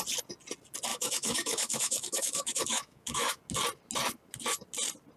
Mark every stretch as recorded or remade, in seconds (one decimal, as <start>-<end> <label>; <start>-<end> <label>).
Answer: 0.0-0.9 recorded; 0.9-3.4 remade; 3.4-5.2 recorded